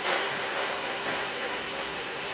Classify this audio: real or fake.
fake